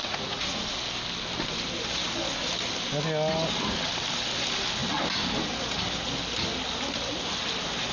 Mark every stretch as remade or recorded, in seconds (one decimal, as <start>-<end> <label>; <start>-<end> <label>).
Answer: 0.0-0.6 remade; 0.6-7.9 recorded

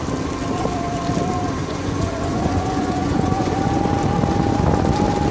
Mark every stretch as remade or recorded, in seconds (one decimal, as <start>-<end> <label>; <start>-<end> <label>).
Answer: 0.0-1.6 recorded; 1.6-3.6 remade; 3.6-5.3 recorded